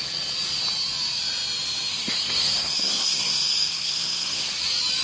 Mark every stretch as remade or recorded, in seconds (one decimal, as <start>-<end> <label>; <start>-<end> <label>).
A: 0.0-1.9 recorded; 1.9-4.5 remade; 4.5-5.0 recorded